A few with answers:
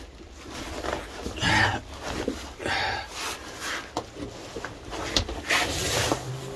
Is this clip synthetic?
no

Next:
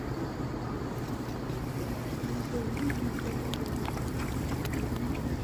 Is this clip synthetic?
no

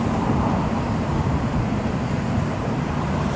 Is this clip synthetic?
no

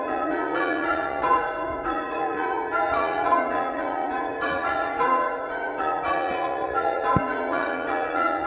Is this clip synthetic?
yes